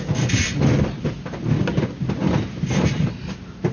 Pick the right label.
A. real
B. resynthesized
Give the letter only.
A